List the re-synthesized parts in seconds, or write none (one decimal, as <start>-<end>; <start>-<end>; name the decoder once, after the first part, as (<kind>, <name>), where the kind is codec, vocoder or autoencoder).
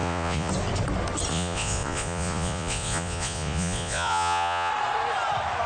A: 0.0-0.5 (vocoder, Vocos); 1.3-4.7